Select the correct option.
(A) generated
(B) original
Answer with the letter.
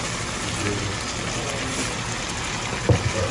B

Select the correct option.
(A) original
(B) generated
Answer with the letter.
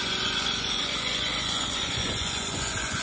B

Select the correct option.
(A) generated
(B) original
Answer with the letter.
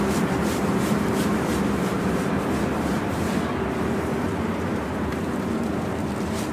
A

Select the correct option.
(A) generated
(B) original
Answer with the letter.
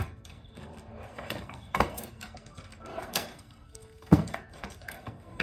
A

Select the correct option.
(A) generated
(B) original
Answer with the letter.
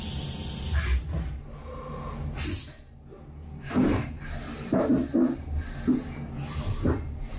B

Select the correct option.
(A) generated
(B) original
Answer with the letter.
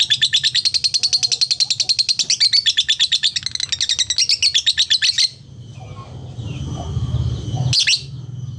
B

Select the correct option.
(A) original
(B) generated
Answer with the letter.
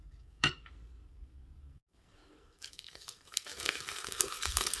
B